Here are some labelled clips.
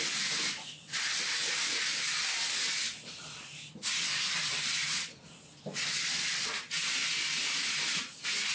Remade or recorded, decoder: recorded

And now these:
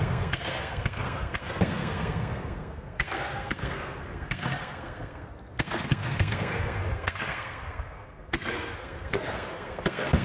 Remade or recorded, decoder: remade, codec, SNAC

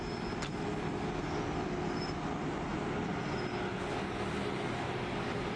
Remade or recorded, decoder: recorded